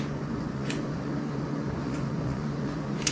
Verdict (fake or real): fake